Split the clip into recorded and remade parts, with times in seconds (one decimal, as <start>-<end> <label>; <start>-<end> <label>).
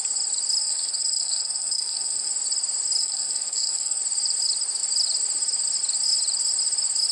0.0-0.6 recorded; 0.6-2.3 remade; 2.3-3.0 recorded; 3.0-4.0 remade; 4.0-7.1 recorded